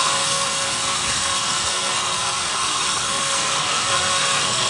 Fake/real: fake